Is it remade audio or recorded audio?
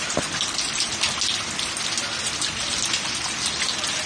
recorded